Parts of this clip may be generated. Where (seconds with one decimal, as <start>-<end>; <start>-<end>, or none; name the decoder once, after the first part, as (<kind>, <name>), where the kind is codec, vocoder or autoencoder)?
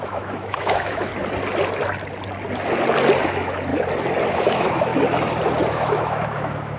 0.0-1.1 (autoencoder, DAC-VAE); 3.2-3.7; 4.3-4.9; 5.7-6.8